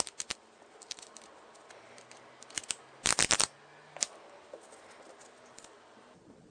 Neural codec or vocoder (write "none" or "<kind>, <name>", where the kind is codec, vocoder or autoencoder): none